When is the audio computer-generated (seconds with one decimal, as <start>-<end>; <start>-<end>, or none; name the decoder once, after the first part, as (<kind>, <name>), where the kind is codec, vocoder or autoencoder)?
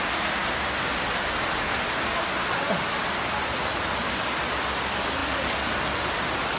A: none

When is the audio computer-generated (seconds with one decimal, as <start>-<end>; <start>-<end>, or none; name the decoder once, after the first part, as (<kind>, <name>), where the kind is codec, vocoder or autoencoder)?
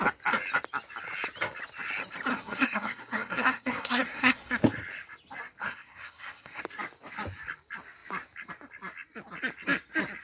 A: 2.3-4.6 (codec, SNAC); 5.6-6.6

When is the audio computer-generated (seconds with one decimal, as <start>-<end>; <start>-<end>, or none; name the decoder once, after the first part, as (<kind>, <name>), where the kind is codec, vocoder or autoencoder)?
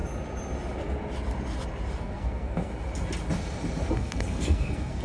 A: 2.0-2.7 (codec, SNAC); 3.9-5.0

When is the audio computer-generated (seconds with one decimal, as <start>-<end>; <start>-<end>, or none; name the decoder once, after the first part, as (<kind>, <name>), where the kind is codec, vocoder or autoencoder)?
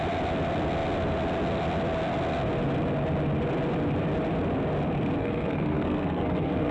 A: 5.2-6.7 (codec, SNAC)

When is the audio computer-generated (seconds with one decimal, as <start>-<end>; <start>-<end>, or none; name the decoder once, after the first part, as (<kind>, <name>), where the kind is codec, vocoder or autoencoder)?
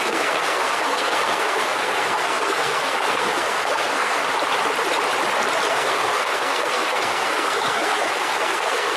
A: 0.0-4.2 (codec, SNAC); 5.7-9.0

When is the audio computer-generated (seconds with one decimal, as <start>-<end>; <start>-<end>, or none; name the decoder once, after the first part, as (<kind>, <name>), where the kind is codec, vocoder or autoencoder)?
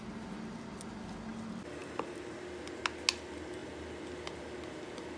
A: none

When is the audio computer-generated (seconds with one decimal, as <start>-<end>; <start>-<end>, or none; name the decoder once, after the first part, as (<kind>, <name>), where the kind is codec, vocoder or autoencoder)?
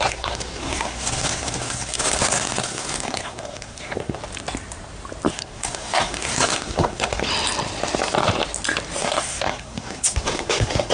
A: 0.0-4.2 (codec, SNAC); 5.3-7.3; 9.0-10.9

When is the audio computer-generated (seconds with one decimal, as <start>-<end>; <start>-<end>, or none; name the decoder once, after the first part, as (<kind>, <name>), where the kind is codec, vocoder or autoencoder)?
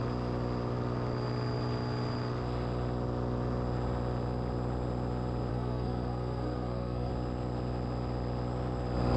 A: 5.5-7.1 (codec, SNAC)